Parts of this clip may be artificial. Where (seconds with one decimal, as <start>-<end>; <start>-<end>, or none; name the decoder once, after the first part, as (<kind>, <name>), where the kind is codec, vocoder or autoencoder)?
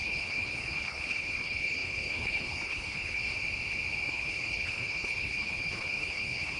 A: 0.0-3.2 (codec, HILCodec); 4.1-6.6